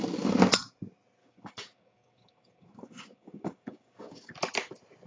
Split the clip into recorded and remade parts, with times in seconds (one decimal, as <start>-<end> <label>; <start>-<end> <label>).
0.0-1.2 recorded; 1.2-4.3 remade; 4.3-5.1 recorded